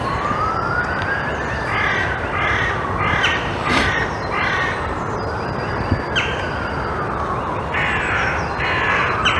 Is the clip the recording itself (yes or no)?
yes